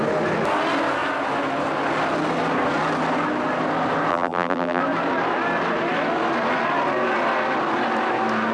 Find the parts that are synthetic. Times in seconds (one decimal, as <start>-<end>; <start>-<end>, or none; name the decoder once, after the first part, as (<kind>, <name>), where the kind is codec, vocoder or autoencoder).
4.1-4.8 (vocoder, BigVGAN v2)